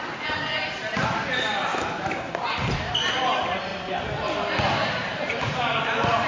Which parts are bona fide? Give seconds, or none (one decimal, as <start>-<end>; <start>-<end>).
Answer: 0.0-6.3